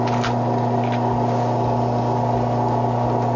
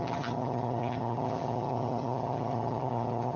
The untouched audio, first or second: first